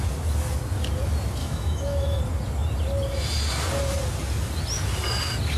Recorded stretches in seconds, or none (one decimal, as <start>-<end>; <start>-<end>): 0.0-1.4; 2.2-5.6